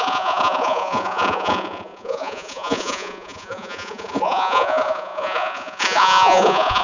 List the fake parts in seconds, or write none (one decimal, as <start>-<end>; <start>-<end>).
0.0-6.8